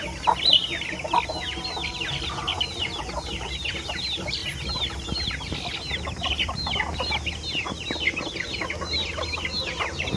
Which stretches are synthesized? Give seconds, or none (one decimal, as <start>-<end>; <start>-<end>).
none